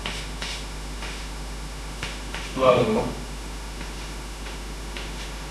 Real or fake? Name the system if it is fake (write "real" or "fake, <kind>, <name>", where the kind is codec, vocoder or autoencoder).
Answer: fake, autoencoder, DAC-VAE